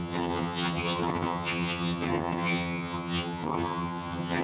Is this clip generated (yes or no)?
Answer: yes